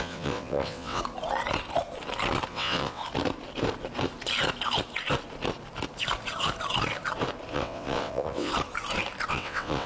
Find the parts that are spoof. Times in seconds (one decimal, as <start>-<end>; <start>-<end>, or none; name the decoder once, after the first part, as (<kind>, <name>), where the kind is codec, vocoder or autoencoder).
0.0-1.0 (vocoder, WaveNeXt); 2.5-3.0; 7.5-8.5; 9.3-9.9